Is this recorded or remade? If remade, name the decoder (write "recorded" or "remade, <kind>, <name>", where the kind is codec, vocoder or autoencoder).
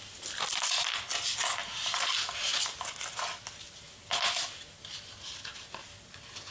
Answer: recorded